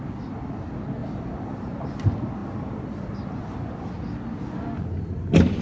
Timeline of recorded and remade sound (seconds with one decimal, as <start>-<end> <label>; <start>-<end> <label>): 0.0-1.0 recorded; 1.0-1.8 remade; 1.8-2.4 recorded; 2.4-3.8 remade; 3.8-5.6 recorded